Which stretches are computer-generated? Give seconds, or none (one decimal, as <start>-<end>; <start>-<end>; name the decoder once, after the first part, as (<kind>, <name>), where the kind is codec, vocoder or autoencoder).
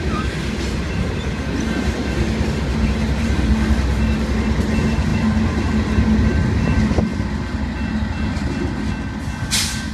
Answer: 2.7-3.5 (vocoder, BigVGAN v2)